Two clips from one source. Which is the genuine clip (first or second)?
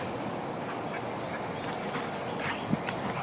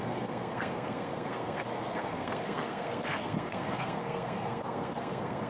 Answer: first